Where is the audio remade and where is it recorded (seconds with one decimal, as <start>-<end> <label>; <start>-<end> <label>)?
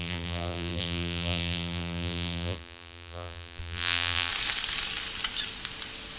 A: 0.0-4.3 remade; 4.3-6.2 recorded